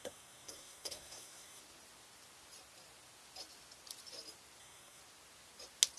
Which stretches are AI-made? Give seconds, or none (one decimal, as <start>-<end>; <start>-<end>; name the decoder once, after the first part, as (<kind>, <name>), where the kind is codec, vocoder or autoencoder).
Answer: 0.0-1.6 (codec, SNAC); 4.6-5.0

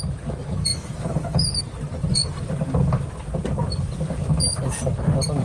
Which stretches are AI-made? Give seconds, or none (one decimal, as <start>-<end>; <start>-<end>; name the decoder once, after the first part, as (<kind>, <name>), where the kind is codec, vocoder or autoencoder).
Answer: 0.7-1.6 (autoencoder, DAC-VAE)